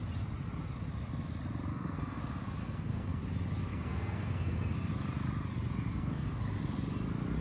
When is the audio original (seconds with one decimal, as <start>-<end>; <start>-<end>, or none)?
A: 0.0-1.7; 2.2-2.6; 3.2-3.7; 4.9-5.9; 6.4-7.4